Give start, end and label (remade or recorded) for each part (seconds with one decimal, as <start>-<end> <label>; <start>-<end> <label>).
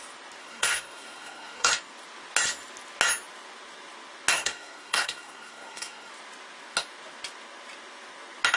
0.0-0.4 recorded; 0.4-1.7 remade; 1.7-4.3 recorded; 4.3-6.1 remade; 6.1-8.6 recorded